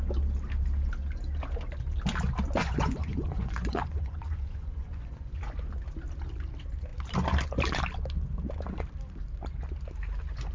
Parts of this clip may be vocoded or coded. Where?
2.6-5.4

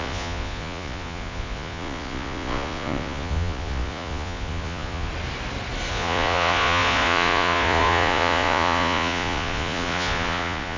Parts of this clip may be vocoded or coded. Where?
0.0-5.1; 5.9-10.8

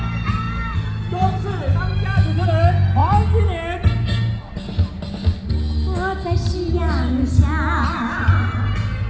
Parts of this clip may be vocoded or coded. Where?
none